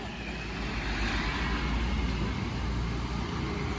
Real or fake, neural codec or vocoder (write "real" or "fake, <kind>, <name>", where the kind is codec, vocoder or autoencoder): real